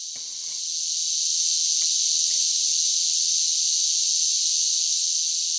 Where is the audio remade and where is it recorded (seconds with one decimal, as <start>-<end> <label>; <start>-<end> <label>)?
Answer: 0.0-5.6 recorded